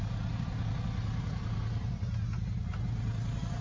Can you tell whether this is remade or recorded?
recorded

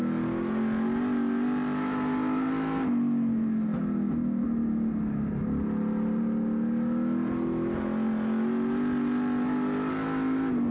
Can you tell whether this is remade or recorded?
recorded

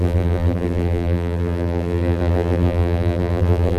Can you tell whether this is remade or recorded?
remade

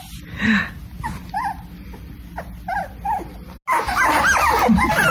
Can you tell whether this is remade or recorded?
recorded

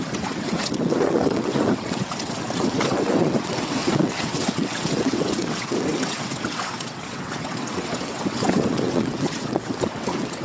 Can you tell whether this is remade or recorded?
remade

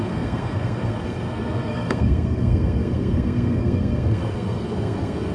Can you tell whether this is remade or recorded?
remade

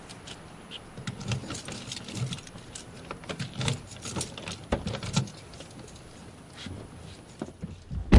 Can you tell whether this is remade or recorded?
recorded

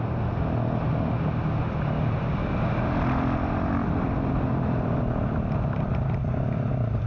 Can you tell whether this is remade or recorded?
recorded